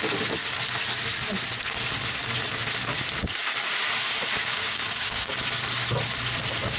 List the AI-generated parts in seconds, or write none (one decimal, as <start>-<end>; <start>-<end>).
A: 4.4-5.3